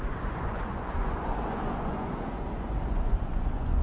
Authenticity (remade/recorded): remade